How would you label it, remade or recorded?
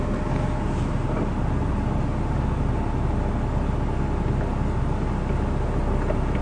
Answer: recorded